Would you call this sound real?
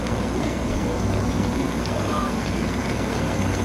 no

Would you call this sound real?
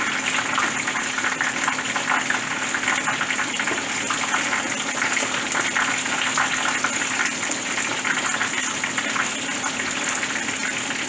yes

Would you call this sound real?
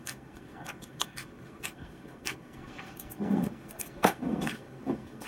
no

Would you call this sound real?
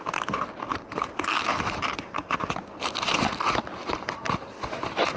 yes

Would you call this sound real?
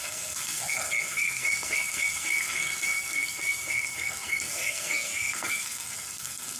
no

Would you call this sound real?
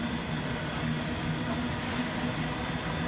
yes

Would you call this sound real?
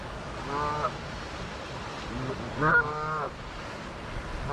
yes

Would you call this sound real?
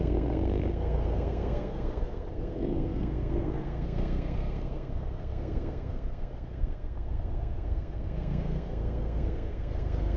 no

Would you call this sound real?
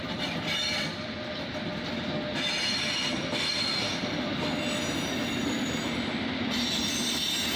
yes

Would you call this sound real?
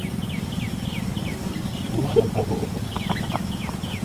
yes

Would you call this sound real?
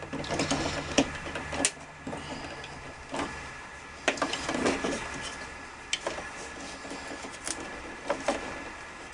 yes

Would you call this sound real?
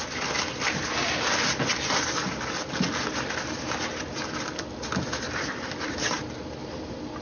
yes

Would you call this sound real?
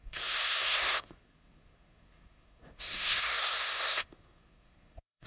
no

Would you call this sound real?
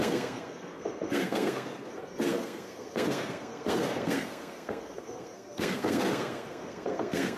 no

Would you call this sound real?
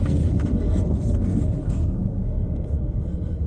no